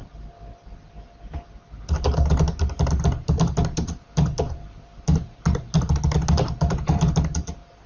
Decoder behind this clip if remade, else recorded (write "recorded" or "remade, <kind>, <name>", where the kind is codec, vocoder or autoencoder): recorded